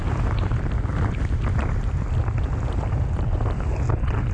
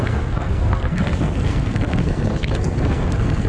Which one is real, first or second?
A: first